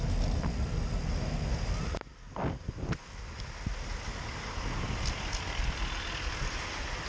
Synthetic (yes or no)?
no